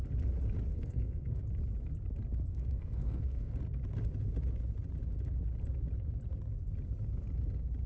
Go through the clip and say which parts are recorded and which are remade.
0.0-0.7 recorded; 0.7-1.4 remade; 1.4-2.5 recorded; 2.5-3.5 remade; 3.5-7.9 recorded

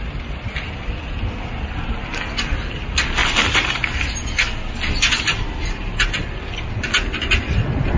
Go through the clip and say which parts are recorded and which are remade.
0.0-8.0 recorded

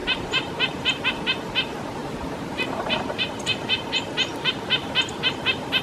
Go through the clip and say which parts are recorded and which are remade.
0.0-1.0 remade; 1.0-2.0 recorded; 2.0-5.8 remade

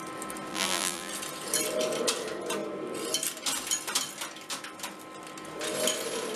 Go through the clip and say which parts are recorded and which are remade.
0.0-0.5 recorded; 0.5-1.1 remade; 1.1-6.4 recorded

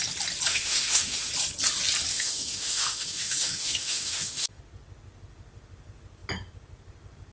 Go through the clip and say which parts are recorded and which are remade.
0.0-0.5 recorded; 0.5-1.3 remade; 1.3-2.1 recorded; 2.1-4.6 remade; 4.6-7.3 recorded

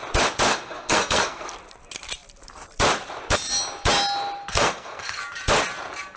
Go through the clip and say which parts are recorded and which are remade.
0.0-0.5 recorded; 0.5-1.5 remade; 1.5-4.5 recorded; 4.5-5.2 remade; 5.2-6.2 recorded